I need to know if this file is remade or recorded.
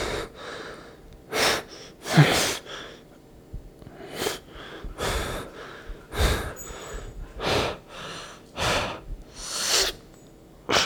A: recorded